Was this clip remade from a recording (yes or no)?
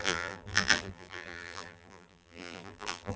yes